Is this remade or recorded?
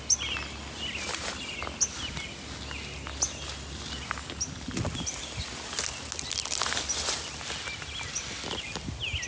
recorded